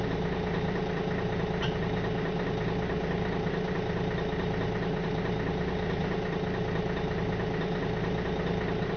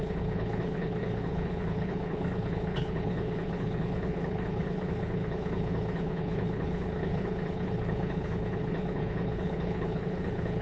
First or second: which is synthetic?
second